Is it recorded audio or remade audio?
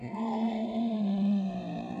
remade